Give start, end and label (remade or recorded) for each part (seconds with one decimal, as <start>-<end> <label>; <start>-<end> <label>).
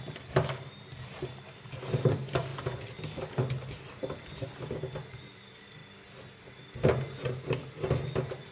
0.0-8.5 recorded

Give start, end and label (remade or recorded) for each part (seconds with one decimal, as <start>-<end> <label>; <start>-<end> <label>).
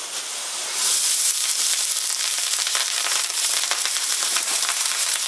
0.0-2.2 recorded; 2.2-5.3 remade